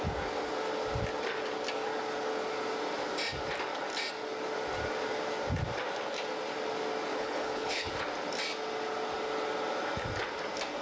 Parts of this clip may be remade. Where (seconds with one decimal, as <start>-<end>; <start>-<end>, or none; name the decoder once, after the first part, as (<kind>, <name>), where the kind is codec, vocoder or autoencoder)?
7.1-8.0 (codec, HILCodec)